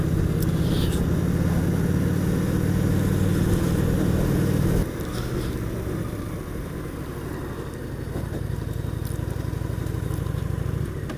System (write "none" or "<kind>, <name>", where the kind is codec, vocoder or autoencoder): none